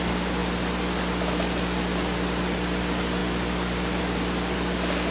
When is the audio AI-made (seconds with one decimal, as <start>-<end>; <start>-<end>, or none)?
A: none